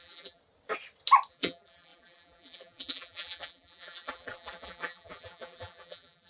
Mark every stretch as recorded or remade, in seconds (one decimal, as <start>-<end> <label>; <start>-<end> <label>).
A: 0.0-0.4 remade; 0.4-1.3 recorded; 1.3-6.3 remade